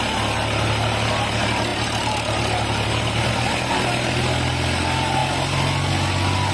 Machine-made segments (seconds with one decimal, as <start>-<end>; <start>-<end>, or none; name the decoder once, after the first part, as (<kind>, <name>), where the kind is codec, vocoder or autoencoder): 1.7-3.3 (vocoder, BigVGAN v2)